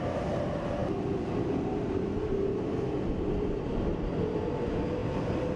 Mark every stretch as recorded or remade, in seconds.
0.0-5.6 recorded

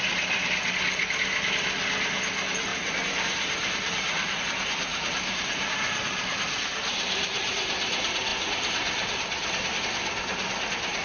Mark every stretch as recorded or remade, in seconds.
0.0-2.7 recorded; 2.7-4.4 remade; 4.4-4.9 recorded; 4.9-6.4 remade; 6.4-6.9 recorded; 6.9-7.5 remade; 7.5-11.0 recorded

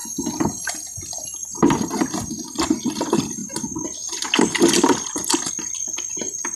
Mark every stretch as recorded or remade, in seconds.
0.0-6.6 recorded

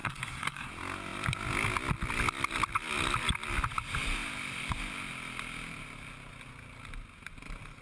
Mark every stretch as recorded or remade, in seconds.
0.0-0.7 remade; 0.7-7.8 recorded